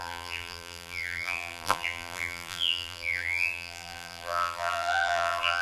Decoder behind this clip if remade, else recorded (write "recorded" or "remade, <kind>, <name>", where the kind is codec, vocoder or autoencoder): remade, vocoder, BigVGAN v2